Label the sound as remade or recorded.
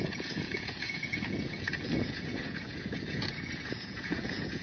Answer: remade